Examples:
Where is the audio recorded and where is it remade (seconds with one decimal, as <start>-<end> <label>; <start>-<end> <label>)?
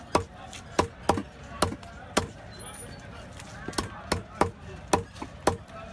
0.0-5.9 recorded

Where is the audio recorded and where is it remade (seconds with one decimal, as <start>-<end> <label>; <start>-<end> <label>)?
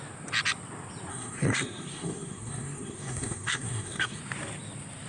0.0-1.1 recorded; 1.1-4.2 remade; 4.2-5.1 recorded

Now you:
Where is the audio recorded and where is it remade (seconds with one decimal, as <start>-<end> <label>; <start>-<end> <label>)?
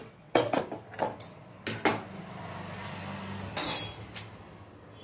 0.0-0.6 remade; 0.6-5.0 recorded